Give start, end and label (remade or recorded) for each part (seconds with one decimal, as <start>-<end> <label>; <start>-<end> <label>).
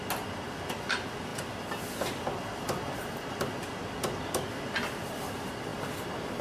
0.0-6.4 recorded